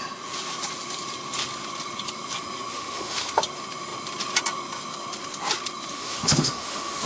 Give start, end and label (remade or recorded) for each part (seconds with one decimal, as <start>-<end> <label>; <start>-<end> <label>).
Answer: 0.0-2.7 recorded; 2.7-3.4 remade; 3.4-5.9 recorded; 5.9-7.1 remade

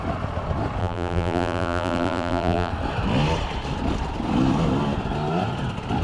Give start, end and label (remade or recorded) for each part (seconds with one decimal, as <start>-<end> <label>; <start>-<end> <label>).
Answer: 0.0-0.8 recorded; 0.8-2.7 remade; 2.7-6.0 recorded